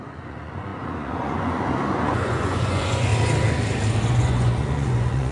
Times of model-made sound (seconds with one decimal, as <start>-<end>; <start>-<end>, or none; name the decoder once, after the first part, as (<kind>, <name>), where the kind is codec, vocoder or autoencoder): 0.0-3.1 (vocoder, Vocos); 4.1-5.3